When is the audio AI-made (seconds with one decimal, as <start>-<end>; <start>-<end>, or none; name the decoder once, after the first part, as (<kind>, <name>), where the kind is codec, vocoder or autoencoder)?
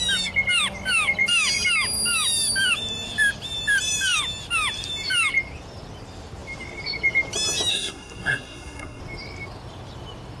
7.7-9.0 (codec, SNAC)